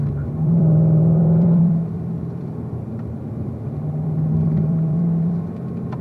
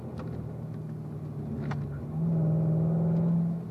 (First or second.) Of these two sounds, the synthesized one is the first